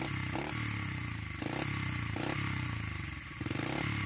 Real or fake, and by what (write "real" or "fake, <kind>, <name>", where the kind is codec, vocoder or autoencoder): real